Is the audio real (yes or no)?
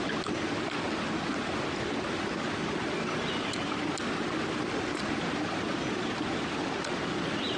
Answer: yes